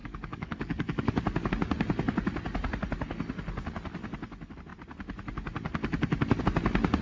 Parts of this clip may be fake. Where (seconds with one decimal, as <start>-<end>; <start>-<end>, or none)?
0.0-1.5

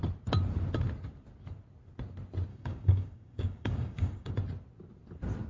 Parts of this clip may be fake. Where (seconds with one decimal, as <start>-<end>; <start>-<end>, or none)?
2.5-4.3